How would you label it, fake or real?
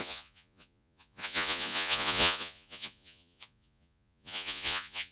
fake